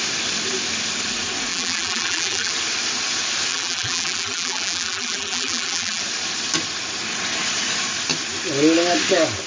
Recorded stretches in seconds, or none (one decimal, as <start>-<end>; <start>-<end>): 0.0-1.5; 2.5-3.5; 6.0-9.5